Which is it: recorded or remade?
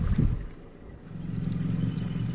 recorded